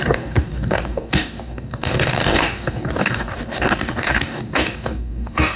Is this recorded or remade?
remade